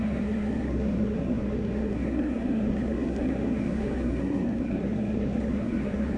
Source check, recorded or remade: remade